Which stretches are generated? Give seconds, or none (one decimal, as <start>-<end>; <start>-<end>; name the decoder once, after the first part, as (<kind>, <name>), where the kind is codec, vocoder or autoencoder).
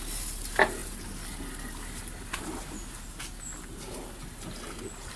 none